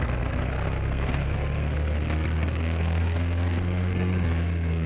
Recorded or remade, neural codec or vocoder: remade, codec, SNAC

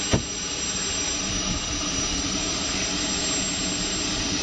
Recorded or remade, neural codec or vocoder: remade, vocoder, BigVGAN v2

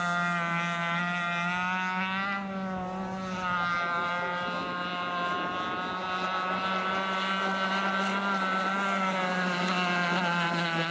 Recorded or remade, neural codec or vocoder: recorded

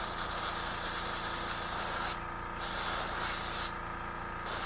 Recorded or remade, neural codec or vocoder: recorded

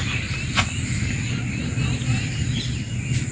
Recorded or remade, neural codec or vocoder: recorded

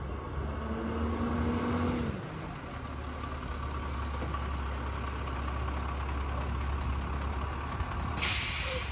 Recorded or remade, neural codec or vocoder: recorded